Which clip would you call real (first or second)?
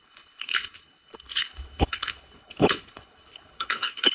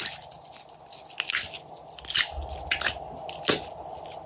second